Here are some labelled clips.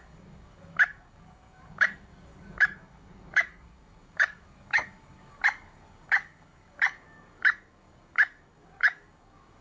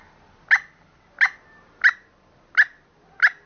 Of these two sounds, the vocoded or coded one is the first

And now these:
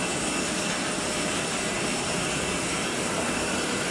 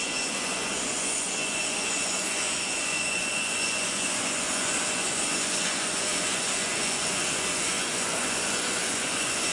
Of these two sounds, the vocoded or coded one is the second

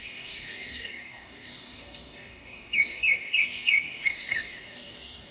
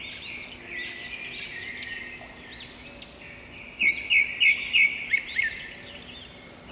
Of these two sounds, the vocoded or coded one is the first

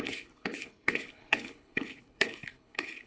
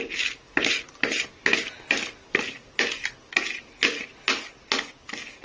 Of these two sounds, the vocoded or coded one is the first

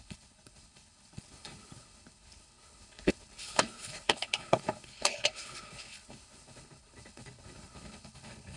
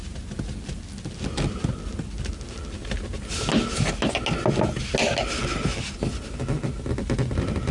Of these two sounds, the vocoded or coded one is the first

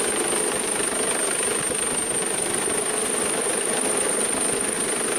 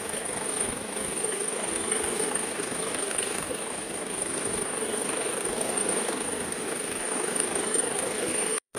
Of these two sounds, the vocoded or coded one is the second